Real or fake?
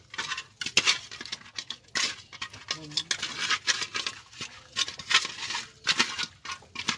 real